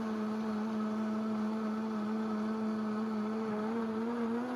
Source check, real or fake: real